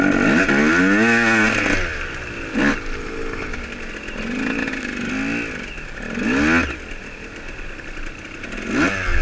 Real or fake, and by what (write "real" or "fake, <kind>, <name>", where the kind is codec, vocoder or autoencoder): real